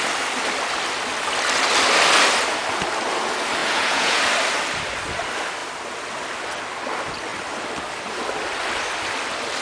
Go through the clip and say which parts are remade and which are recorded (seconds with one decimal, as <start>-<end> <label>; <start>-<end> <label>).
0.0-3.6 recorded; 3.6-4.2 remade; 4.2-9.6 recorded